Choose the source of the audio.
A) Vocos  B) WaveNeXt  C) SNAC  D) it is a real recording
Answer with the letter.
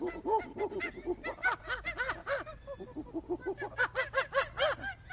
D